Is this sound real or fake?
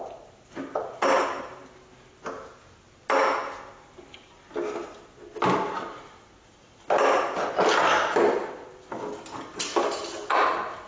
real